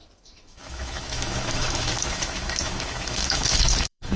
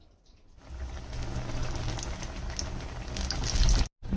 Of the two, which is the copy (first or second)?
first